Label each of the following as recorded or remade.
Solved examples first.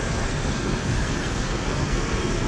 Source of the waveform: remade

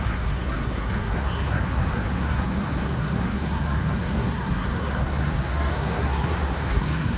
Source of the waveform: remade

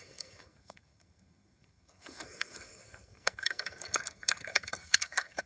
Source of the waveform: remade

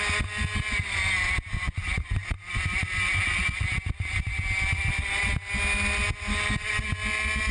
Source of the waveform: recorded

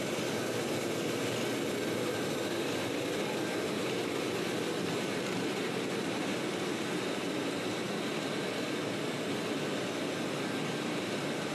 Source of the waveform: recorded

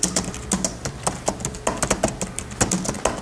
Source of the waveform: recorded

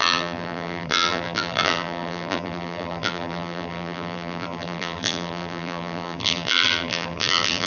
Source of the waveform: remade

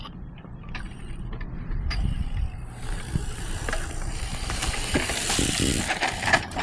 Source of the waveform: remade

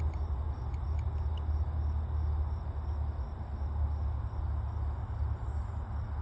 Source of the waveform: recorded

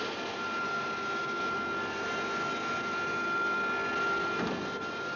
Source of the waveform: recorded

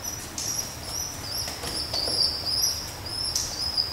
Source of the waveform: recorded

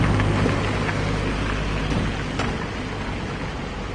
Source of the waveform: recorded